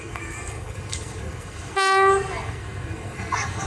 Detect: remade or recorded remade